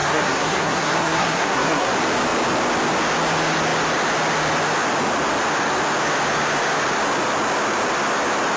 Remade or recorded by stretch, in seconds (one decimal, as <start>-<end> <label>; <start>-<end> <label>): 0.0-1.9 remade; 1.9-8.6 recorded